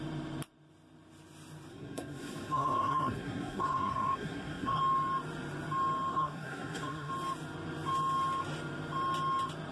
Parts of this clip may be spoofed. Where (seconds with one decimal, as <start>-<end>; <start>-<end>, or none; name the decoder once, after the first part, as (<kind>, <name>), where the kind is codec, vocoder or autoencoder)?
1.7-4.8 (codec, SNAC); 6.1-7.1